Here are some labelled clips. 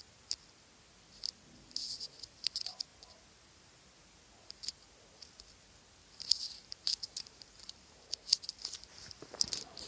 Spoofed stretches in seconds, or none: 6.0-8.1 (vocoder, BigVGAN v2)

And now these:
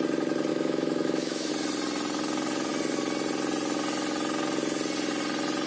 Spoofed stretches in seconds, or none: 0.5-1.5 (autoencoder, DAC-VAE)